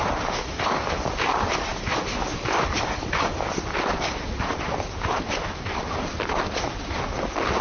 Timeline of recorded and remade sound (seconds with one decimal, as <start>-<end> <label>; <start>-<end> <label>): 0.0-7.6 recorded